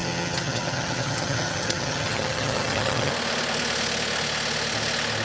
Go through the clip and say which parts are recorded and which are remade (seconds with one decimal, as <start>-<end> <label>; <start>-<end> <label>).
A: 0.0-3.1 remade; 3.1-5.2 recorded